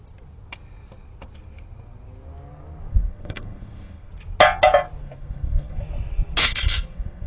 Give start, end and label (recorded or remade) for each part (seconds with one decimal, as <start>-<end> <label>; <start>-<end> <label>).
0.0-2.9 recorded; 2.9-4.1 remade; 4.1-5.0 recorded; 5.0-5.8 remade; 5.8-6.4 recorded; 6.4-7.3 remade